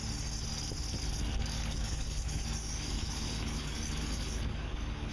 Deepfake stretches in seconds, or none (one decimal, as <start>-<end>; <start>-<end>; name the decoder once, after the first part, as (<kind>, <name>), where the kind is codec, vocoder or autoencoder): 1.4-5.1 (codec, DAC)